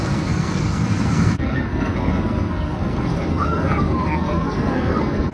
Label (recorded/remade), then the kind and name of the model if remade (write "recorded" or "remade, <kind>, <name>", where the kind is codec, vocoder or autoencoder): remade, codec, SNAC